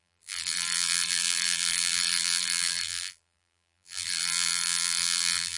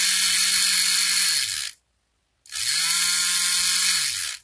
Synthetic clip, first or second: first